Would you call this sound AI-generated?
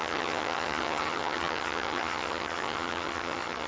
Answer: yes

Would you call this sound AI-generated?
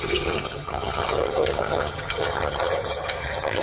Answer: yes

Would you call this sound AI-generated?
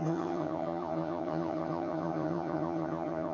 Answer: yes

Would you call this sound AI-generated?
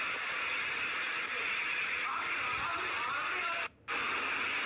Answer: no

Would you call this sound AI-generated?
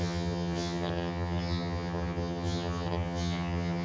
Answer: yes